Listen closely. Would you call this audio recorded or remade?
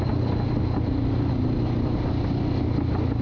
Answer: recorded